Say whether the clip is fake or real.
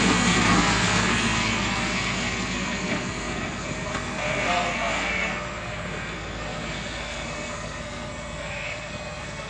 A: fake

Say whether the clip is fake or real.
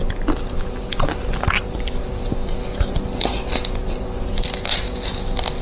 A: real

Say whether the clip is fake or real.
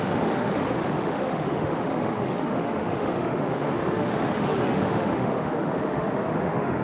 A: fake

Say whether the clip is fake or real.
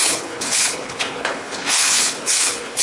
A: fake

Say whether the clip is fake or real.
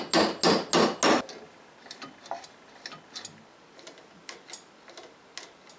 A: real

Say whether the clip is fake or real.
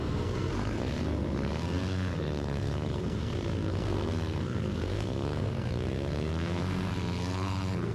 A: fake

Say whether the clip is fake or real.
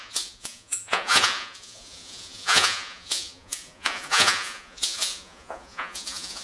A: fake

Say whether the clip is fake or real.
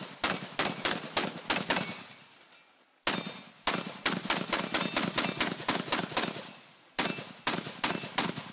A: real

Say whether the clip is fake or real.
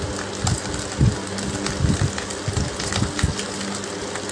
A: real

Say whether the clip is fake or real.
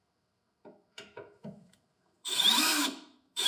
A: fake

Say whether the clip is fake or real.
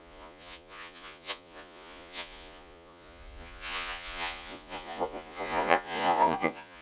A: fake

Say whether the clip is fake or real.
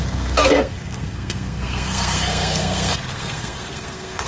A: fake